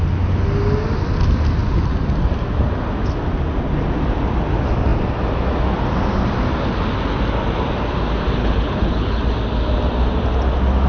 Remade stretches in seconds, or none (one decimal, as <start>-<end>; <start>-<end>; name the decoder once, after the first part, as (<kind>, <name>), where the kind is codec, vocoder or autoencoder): 8.4-9.2 (codec, HILCodec)

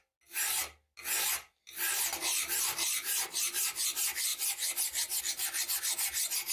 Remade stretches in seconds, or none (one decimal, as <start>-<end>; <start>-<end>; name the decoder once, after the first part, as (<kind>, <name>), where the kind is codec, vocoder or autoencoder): 4.3-5.2 (vocoder, BigVGAN v2)

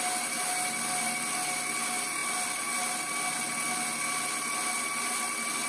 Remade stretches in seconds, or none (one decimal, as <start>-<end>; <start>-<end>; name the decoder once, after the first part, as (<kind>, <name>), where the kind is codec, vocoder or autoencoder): none

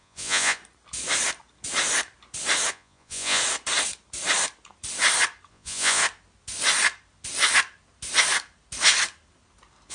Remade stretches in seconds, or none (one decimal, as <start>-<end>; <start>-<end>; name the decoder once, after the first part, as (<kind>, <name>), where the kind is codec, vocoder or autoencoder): 0.0-0.6 (vocoder, Vocos); 2.7-3.4; 5.5-6.0

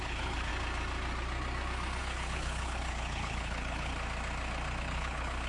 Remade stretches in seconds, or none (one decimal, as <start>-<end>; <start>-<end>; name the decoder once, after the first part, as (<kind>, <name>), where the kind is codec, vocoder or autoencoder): 0.0-0.5 (codec, HILCodec); 2.0-3.9; 4.8-5.5

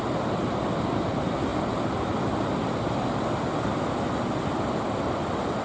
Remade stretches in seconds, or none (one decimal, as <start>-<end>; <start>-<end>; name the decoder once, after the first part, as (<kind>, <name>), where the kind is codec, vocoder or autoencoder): none

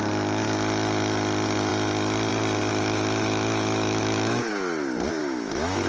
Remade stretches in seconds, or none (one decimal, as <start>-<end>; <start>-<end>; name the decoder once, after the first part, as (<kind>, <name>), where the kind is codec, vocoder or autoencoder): 2.7-4.5 (autoencoder, DAC-VAE); 5.2-5.9

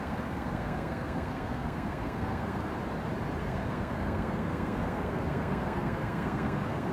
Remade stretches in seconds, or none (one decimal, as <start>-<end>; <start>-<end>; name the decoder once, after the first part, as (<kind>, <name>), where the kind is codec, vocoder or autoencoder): 0.0-2.7 (codec, SNAC); 3.4-6.9